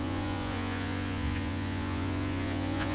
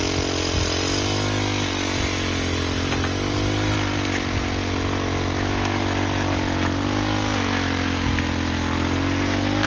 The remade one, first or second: first